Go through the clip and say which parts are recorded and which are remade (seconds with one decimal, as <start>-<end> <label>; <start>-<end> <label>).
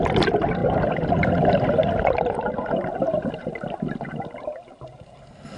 0.0-5.6 recorded